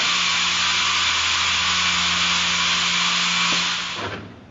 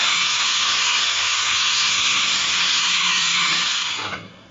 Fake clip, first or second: second